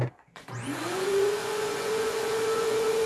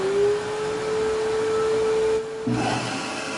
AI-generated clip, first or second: first